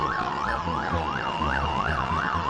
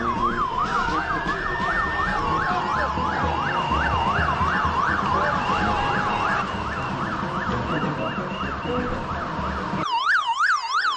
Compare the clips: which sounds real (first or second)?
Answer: second